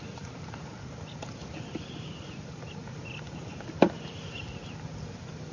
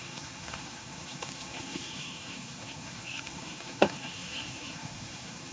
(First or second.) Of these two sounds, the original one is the first